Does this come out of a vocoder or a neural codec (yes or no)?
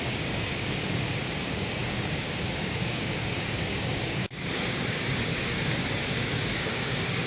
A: yes